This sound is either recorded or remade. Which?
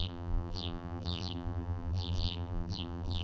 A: remade